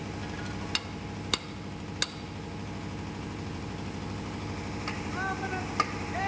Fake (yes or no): no